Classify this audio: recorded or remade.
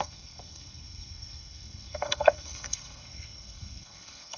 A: remade